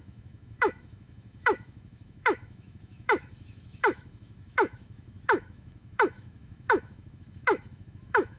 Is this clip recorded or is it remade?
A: remade